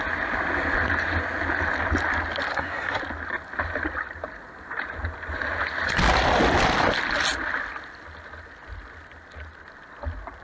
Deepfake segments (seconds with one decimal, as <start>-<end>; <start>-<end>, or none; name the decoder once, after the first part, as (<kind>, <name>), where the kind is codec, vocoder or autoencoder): 2.5-3.0 (codec, SNAC)